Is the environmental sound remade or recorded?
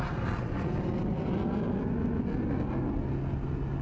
recorded